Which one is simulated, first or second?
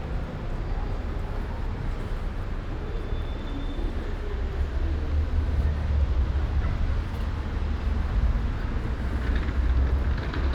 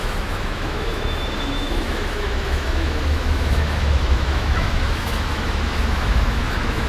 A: second